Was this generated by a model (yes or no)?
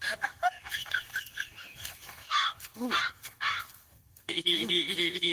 yes